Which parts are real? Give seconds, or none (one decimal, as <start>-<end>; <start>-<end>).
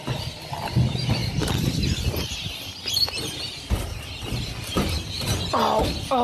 0.0-6.2